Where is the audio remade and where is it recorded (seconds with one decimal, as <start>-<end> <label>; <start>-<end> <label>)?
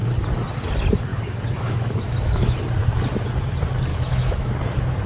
0.0-1.1 recorded; 1.1-2.6 remade; 2.6-3.9 recorded; 3.9-4.5 remade; 4.5-5.1 recorded